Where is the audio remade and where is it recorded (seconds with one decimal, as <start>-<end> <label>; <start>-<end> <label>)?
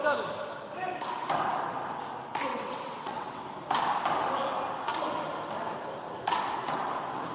0.0-2.5 recorded; 2.5-3.4 remade; 3.4-7.3 recorded